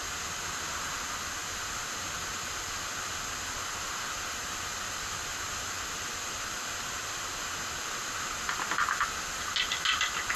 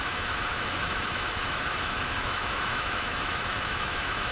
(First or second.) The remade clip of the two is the second